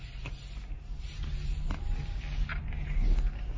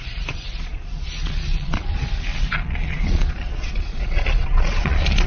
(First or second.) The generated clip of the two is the second